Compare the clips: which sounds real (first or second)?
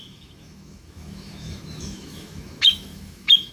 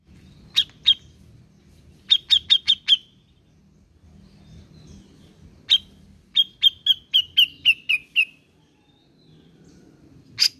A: second